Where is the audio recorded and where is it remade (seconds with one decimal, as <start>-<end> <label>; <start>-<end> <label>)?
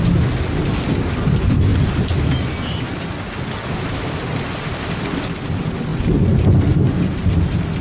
0.0-7.8 recorded